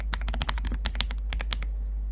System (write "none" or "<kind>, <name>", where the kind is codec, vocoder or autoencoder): none